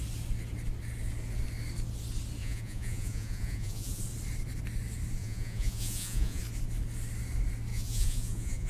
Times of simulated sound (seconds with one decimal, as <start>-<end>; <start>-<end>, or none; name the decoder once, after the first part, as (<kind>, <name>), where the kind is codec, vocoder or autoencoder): 2.4-4.0 (vocoder, Vocos); 5.2-6.4; 7.7-8.7